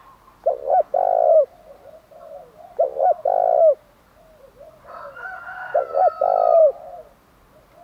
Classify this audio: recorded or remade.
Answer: recorded